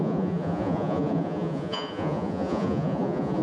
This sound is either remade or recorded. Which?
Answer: remade